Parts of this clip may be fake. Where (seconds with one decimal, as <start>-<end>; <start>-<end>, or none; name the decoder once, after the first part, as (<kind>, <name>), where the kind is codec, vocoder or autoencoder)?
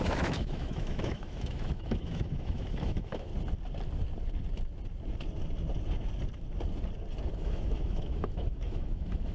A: 0.0-3.3 (autoencoder, DAC-VAE); 7.3-9.3